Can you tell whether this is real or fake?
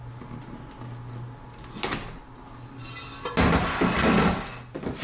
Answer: real